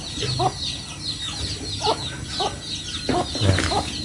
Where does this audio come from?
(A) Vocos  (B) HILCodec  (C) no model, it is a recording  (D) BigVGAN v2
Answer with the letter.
C